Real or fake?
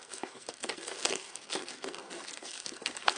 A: fake